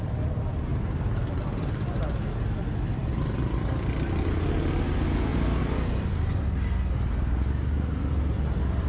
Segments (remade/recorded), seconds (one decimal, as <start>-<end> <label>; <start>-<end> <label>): 0.0-0.7 recorded; 0.7-1.4 remade; 1.4-3.0 recorded; 3.0-3.6 remade; 3.6-5.3 recorded; 5.3-6.7 remade; 6.7-8.9 recorded